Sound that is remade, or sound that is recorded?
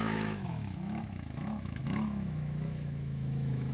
remade